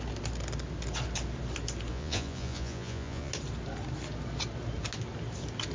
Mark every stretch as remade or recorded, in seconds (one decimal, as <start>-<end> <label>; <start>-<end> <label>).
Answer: 0.0-1.9 recorded; 1.9-3.3 remade; 3.3-5.7 recorded